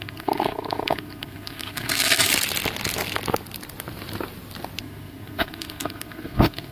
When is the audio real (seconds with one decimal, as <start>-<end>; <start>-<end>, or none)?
2.3-4.8